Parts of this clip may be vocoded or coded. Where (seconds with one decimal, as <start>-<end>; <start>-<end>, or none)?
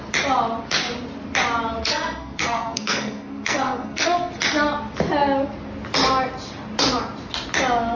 1.8-4.3